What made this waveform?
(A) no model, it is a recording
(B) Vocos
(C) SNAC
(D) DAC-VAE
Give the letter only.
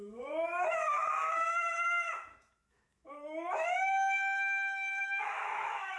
D